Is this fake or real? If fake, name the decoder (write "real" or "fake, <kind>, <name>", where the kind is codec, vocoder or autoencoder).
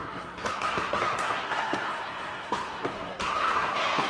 fake, codec, SNAC